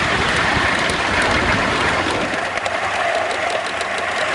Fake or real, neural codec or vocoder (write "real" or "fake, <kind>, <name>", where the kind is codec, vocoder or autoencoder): real